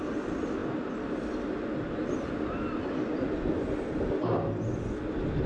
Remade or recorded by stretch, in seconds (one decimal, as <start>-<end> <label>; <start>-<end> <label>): 0.0-5.5 recorded

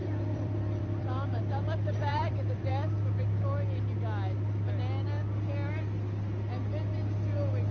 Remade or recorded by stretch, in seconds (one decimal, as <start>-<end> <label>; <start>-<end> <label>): 0.0-1.4 remade; 1.4-2.0 recorded; 2.0-2.7 remade; 2.7-7.7 recorded

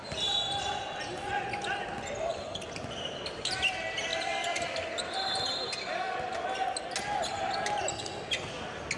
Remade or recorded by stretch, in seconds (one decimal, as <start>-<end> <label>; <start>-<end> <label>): 0.0-9.0 recorded